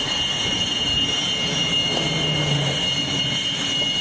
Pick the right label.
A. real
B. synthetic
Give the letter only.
A